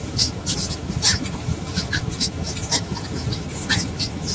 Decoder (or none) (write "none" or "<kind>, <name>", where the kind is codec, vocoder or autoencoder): autoencoder, DAC-VAE